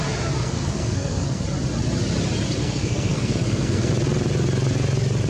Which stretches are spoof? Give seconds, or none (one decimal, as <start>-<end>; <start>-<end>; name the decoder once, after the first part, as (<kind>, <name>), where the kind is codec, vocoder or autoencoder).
0.4-1.4 (codec, SNAC); 2.6-3.9